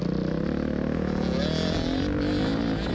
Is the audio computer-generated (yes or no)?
no